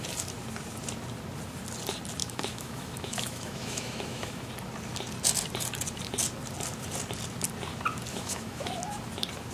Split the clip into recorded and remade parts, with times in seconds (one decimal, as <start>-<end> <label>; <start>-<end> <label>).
0.0-2.2 recorded; 2.2-4.5 remade; 4.5-8.1 recorded; 8.1-8.7 remade; 8.7-9.5 recorded